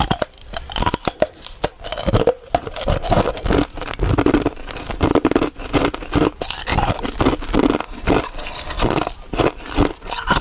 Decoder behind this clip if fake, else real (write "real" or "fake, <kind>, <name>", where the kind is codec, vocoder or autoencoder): real